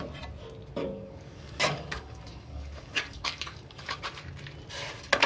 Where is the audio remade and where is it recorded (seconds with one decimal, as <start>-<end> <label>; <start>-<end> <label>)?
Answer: 0.0-0.8 recorded; 0.8-4.0 remade; 4.0-5.3 recorded